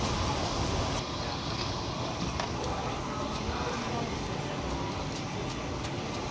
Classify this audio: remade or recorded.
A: recorded